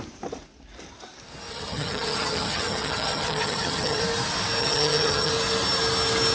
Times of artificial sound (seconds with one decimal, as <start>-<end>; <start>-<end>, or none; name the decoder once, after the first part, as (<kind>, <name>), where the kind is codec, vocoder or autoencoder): 1.5-4.0 (vocoder, HiFi-GAN); 4.6-5.3